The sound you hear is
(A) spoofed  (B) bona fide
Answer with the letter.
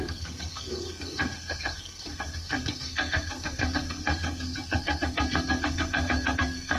A